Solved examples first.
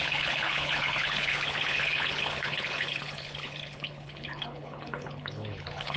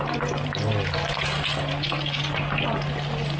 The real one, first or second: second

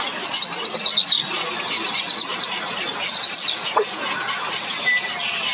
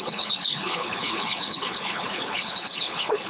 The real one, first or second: first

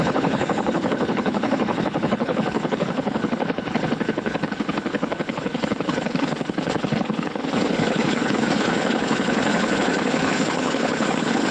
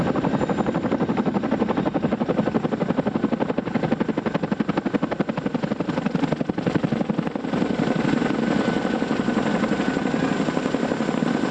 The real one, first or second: second